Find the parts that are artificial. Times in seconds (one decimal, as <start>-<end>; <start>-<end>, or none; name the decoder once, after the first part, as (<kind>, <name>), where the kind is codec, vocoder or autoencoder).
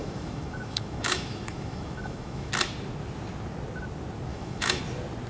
0.0-2.5 (autoencoder, DAC-VAE); 4.3-4.8